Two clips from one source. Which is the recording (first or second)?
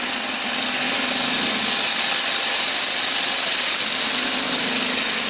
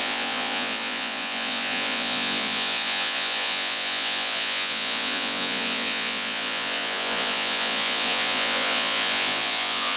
first